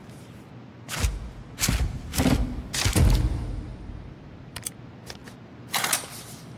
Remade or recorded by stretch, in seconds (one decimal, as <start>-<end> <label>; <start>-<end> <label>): 0.0-3.7 recorded; 3.7-4.8 remade; 4.8-6.6 recorded